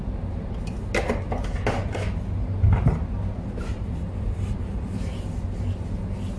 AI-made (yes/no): no